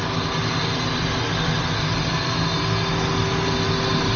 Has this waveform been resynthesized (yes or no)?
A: no